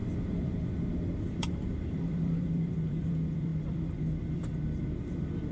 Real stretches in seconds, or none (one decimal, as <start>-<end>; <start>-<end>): 0.0-1.2